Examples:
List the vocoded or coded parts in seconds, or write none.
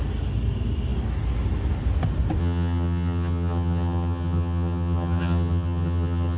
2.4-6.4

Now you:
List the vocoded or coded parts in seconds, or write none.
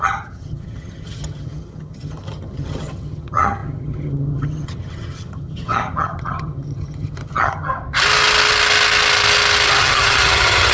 0.0-7.7; 9.8-10.7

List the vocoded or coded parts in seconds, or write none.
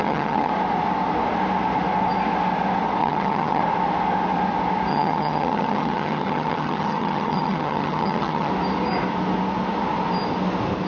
0.0-0.5; 3.0-3.6; 4.9-8.5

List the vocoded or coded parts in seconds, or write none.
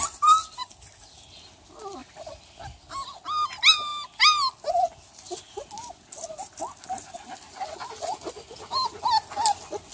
none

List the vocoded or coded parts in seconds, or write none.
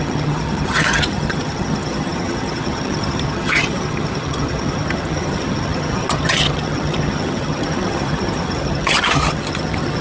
0.0-10.0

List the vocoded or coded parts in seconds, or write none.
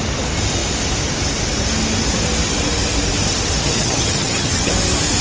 3.6-4.7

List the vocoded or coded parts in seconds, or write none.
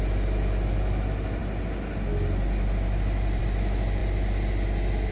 none